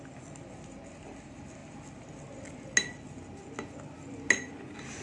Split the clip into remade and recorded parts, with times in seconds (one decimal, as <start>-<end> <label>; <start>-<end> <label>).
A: 0.0-5.0 recorded